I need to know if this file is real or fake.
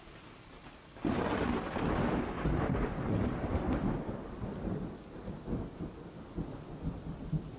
real